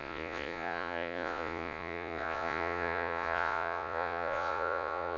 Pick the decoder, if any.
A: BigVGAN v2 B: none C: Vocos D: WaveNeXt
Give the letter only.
C